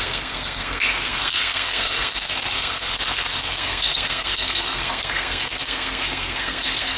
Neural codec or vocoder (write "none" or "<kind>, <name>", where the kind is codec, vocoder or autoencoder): codec, SNAC